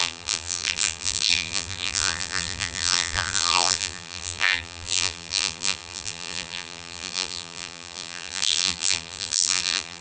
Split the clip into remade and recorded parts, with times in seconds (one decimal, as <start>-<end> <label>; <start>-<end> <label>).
0.0-10.0 remade